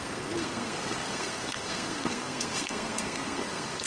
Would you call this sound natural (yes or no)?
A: no